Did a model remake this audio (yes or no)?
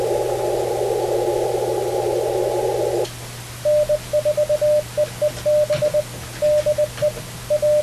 no